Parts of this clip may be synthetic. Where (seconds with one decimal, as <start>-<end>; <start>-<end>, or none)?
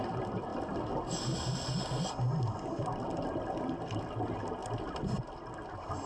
none